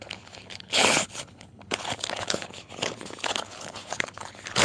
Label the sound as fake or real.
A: fake